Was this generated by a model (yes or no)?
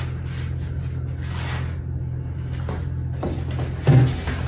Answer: no